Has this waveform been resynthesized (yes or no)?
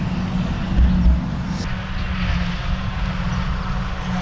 no